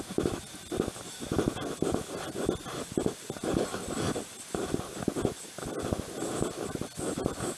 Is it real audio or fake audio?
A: real